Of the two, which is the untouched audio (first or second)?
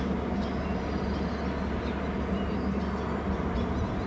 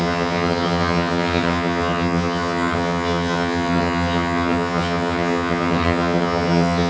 first